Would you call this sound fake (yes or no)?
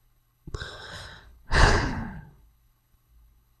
yes